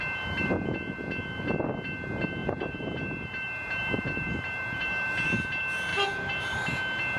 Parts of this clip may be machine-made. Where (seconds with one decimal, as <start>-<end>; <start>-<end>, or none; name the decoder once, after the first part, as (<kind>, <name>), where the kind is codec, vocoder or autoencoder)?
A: 2.4-5.4 (vocoder, BigVGAN v2); 5.9-6.7